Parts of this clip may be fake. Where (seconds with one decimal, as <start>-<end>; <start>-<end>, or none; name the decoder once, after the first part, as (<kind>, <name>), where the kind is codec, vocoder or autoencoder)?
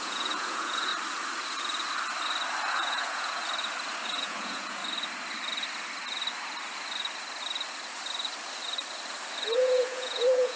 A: 0.0-0.9 (vocoder, Vocos); 2.7-3.4; 4.2-4.8; 9.4-10.6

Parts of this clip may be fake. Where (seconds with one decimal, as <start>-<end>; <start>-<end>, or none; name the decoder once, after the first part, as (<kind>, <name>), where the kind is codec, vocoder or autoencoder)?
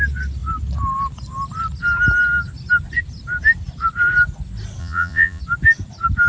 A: 4.8-5.4 (vocoder, Vocos)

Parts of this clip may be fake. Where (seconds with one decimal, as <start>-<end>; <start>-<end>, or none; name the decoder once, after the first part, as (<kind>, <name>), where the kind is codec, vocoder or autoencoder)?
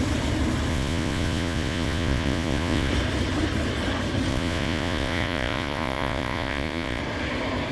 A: 0.7-2.9 (vocoder, Vocos); 4.3-7.0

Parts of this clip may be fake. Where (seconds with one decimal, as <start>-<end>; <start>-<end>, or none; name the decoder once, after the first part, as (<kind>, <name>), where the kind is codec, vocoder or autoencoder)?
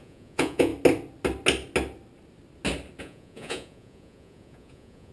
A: 0.0-0.7 (vocoder, Vocos); 3.0-5.1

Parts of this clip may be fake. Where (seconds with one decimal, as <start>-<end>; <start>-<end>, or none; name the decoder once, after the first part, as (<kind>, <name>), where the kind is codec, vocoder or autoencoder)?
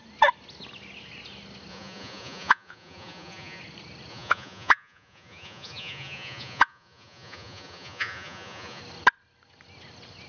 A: 1.7-3.6 (vocoder, Vocos); 4.1-8.8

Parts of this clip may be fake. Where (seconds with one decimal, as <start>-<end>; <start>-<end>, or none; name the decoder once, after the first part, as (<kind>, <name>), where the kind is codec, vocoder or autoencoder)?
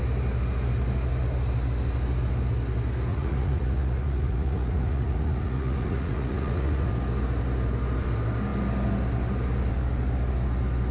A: 3.1-6.9 (vocoder, Vocos)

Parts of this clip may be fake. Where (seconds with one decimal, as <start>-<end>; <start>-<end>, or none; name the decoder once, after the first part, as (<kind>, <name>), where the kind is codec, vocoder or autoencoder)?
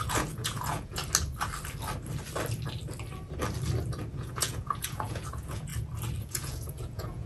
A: 0.0-1.0 (vocoder, Vocos); 4.1-5.7; 6.2-7.3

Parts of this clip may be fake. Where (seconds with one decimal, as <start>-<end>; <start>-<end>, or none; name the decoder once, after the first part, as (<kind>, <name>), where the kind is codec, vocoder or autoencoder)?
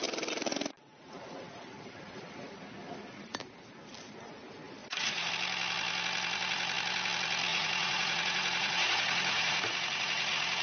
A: 4.8-5.3 (vocoder, Vocos); 7.5-10.6